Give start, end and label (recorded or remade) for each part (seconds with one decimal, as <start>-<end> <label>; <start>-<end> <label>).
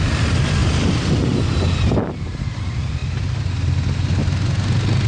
0.0-5.1 recorded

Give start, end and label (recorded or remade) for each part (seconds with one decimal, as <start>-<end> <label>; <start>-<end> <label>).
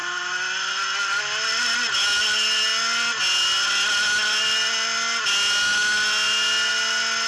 0.0-7.3 recorded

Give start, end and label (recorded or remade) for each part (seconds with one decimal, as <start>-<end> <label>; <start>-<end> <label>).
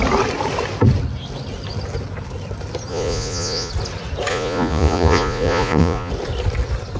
0.0-2.9 recorded; 2.9-3.7 remade; 3.7-4.3 recorded; 4.3-6.1 remade; 6.1-7.0 recorded